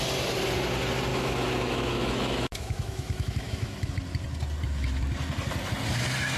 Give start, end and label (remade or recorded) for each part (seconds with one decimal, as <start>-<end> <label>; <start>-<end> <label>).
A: 0.0-1.1 recorded; 1.1-3.9 remade; 3.9-6.4 recorded